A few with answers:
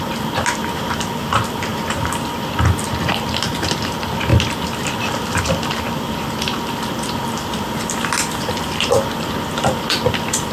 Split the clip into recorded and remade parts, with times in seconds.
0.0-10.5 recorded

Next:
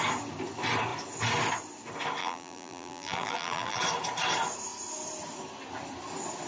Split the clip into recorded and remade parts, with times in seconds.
0.0-2.2 recorded; 2.2-3.8 remade; 3.8-6.5 recorded

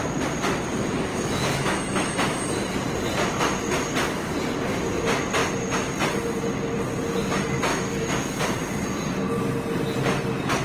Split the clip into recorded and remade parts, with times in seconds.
0.0-1.1 recorded; 1.1-2.5 remade; 2.5-7.7 recorded; 7.7-8.4 remade; 8.4-10.6 recorded